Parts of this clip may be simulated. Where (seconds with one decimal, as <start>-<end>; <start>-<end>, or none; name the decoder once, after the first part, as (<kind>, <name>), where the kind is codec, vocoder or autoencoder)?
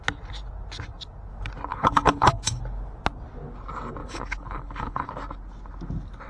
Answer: 1.7-2.6 (codec, HILCodec); 4.0-5.1